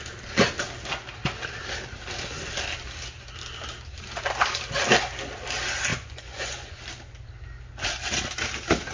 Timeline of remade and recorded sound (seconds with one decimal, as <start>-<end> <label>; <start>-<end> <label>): 0.0-5.9 recorded; 5.9-6.8 remade; 6.8-8.9 recorded